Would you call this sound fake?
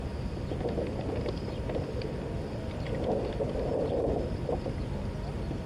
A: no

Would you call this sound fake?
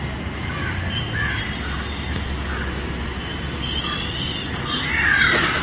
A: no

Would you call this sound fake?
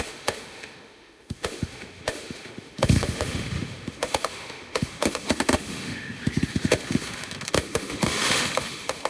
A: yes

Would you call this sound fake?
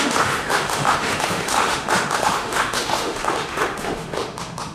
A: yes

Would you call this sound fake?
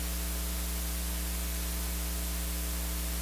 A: no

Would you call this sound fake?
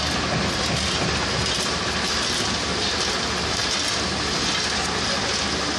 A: no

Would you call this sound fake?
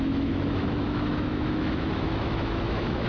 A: yes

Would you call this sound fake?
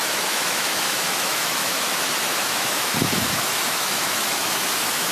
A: yes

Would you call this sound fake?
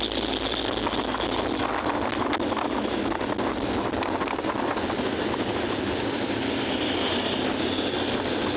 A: no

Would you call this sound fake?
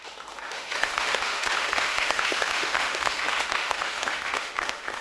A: yes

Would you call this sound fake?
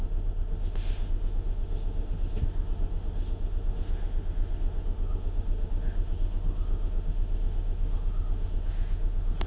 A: yes